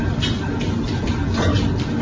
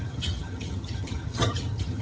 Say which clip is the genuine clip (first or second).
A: first